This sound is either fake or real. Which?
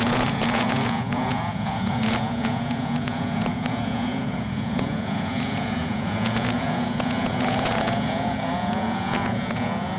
fake